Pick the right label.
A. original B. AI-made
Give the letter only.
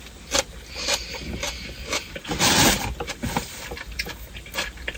A